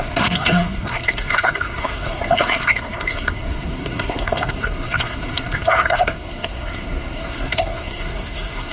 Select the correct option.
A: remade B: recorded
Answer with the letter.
A